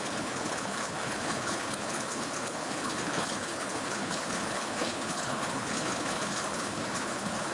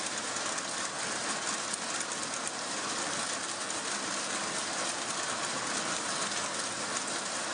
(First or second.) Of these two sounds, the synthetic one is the first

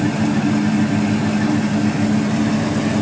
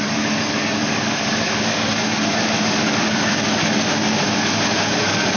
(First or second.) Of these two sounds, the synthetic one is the second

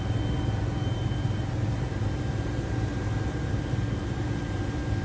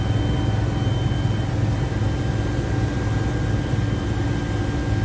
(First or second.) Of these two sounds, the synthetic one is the first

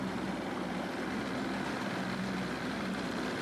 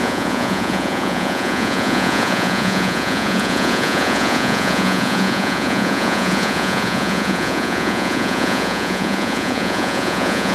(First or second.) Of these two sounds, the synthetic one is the second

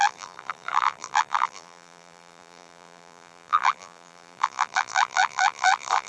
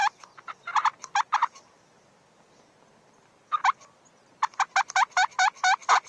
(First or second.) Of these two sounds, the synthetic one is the first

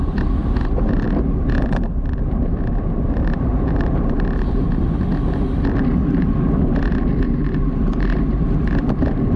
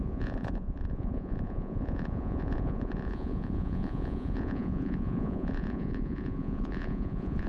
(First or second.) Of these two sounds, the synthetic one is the second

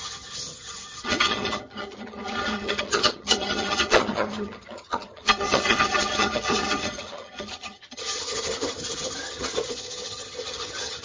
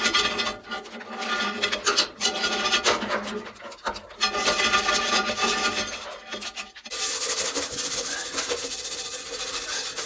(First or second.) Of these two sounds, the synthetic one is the first